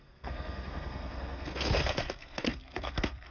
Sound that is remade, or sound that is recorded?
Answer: remade